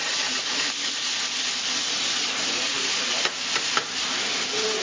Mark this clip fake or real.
real